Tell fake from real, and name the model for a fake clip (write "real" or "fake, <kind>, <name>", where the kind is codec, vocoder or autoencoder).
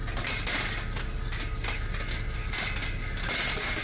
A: real